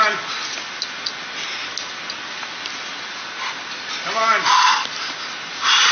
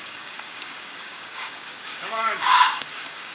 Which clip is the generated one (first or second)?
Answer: second